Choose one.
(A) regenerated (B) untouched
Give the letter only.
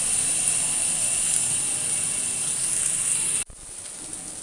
B